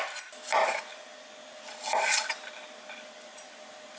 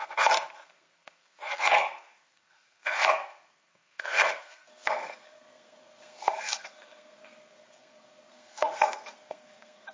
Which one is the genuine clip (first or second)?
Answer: first